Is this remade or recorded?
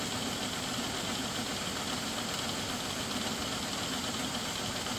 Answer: recorded